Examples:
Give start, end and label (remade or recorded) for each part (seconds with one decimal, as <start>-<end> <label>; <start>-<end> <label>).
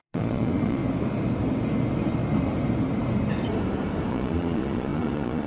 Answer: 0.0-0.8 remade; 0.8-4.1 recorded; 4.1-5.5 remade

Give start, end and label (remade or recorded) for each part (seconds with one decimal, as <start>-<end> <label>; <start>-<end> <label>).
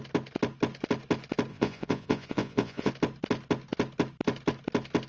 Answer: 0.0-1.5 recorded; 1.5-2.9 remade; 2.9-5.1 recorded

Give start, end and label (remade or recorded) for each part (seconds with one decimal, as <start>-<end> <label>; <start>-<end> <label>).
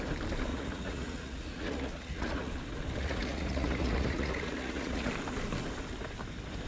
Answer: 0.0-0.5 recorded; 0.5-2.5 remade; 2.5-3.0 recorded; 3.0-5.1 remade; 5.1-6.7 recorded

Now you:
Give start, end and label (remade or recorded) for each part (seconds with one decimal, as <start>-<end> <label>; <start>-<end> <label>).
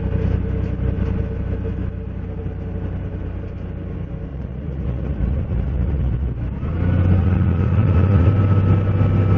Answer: 0.0-4.3 recorded; 4.3-6.3 remade; 6.3-7.2 recorded; 7.2-8.3 remade; 8.3-9.4 recorded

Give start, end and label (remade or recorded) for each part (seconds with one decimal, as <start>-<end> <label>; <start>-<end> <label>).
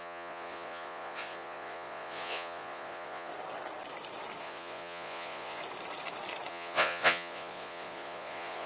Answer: 0.0-3.3 remade; 3.3-4.4 recorded; 4.4-5.6 remade; 5.6-6.5 recorded; 6.5-8.7 remade